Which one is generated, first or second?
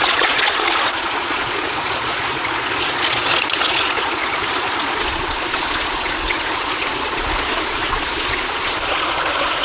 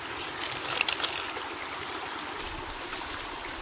first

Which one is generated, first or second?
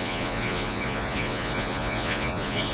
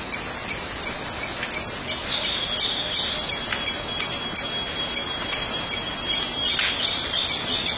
first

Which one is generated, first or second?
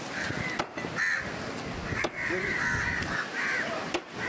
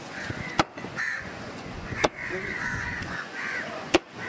second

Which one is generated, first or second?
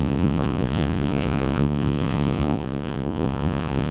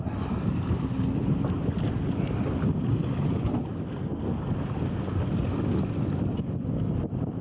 first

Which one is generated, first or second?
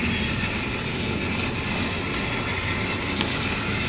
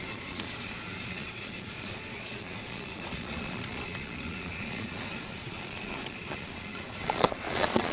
second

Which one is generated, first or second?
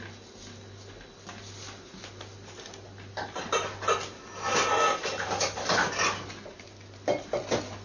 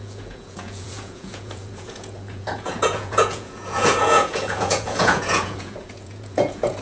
second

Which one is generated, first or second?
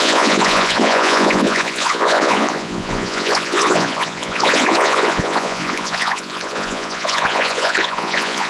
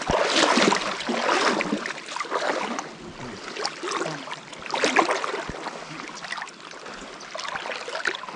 first